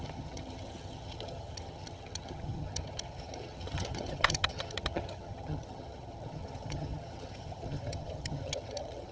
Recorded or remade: remade